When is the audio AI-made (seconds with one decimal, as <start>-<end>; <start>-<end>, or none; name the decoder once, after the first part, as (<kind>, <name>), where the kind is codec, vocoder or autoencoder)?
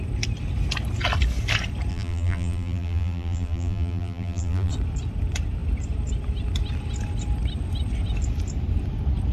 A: 1.9-4.7 (vocoder, BigVGAN v2)